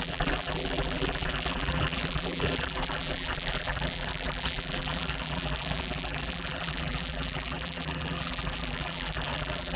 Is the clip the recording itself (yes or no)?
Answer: no